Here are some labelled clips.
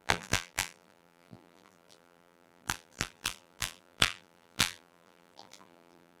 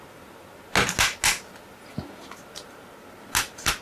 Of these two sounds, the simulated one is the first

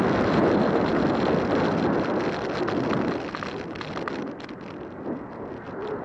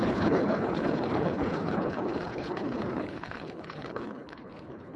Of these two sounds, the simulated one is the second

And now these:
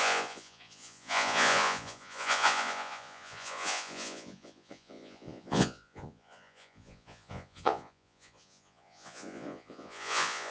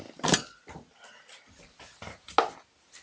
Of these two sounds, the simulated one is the first